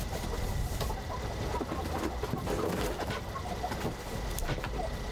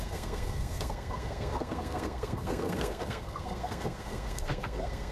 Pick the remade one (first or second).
second